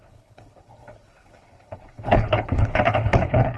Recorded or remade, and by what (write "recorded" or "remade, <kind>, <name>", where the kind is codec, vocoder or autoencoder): remade, codec, HILCodec